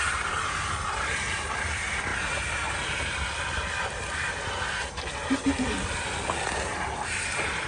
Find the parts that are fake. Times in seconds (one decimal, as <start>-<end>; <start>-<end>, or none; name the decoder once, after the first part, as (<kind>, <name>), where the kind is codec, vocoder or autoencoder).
none